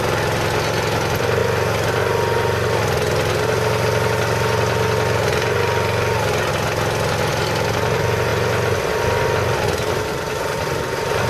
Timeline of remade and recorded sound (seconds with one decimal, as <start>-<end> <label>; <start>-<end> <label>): 0.0-11.3 recorded